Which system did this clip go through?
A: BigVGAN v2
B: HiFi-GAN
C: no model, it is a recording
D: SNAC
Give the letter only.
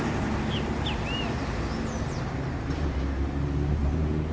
C